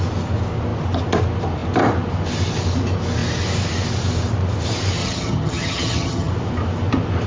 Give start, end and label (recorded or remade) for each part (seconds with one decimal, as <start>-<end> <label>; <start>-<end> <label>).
0.0-5.0 recorded; 5.0-6.3 remade; 6.3-7.3 recorded